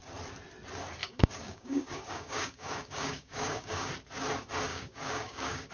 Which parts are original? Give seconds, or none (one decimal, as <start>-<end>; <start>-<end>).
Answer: 0.0-1.0; 3.9-4.7